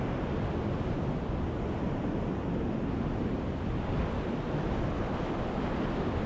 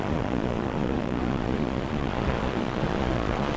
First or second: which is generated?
second